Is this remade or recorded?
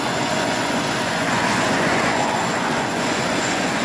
remade